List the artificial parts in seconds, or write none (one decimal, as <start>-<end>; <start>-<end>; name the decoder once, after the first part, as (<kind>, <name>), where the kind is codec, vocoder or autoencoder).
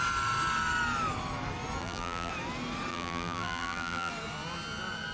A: 1.8-2.3 (vocoder, BigVGAN v2); 2.9-4.1